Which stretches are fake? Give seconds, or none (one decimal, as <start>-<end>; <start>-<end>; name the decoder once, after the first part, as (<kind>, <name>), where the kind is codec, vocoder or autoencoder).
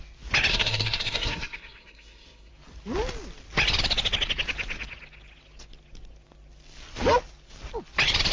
0.5-2.5 (codec, SNAC)